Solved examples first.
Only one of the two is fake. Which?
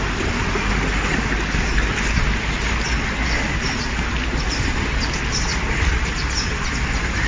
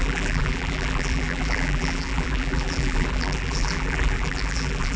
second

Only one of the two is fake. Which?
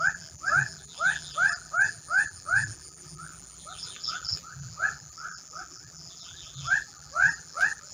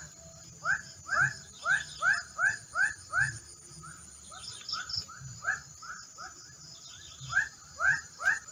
first